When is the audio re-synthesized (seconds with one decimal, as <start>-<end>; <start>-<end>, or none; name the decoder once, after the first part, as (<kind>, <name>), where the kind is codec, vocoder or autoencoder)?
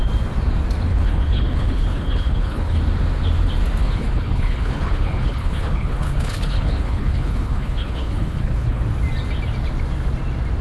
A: 0.9-2.8 (codec, HILCodec); 3.8-8.8